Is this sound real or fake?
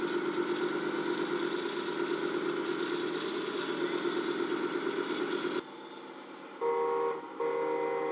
real